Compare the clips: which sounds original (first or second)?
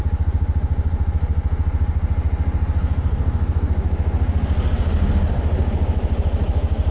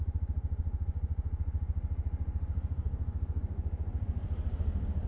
first